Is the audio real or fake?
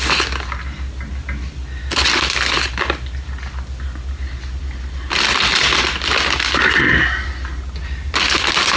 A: real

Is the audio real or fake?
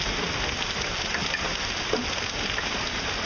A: real